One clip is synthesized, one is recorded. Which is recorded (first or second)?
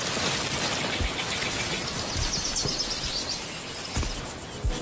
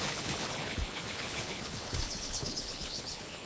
first